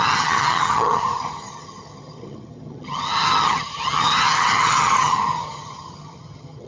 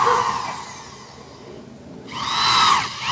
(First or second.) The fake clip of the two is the first